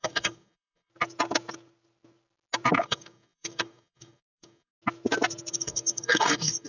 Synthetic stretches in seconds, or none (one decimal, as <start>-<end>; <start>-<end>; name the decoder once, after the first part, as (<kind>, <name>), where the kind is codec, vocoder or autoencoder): 0.0-0.9 (codec, DAC); 2.8-4.7; 5.5-6.7